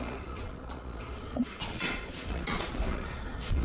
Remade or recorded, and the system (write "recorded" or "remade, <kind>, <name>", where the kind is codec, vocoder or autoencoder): remade, vocoder, Vocos